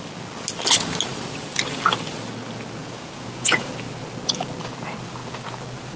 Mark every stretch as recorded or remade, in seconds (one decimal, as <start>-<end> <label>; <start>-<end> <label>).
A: 0.0-2.8 recorded; 2.8-3.7 remade; 3.7-6.0 recorded